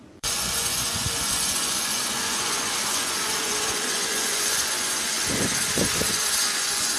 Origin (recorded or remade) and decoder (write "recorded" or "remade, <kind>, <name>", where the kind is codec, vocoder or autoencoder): remade, vocoder, Vocos